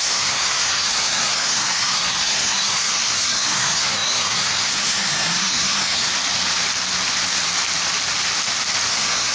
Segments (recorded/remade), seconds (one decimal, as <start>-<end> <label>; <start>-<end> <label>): 0.0-6.1 remade; 6.1-8.9 recorded; 8.9-9.3 remade